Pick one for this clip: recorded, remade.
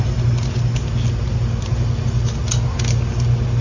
recorded